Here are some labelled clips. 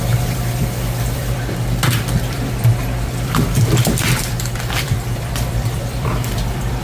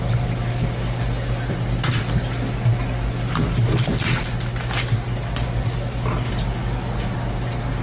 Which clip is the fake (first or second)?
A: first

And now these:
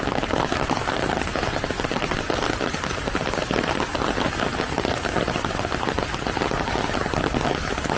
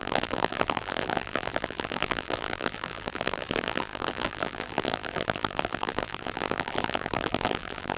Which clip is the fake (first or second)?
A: second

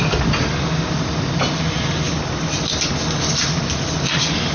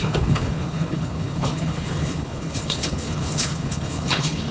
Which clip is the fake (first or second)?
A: second